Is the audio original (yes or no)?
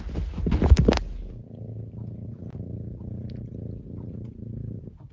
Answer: yes